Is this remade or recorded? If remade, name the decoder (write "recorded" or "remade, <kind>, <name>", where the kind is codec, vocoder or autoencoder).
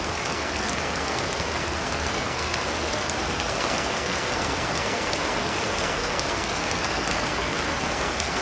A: remade, codec, SNAC